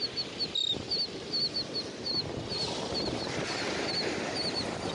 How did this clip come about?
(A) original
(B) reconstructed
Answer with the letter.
A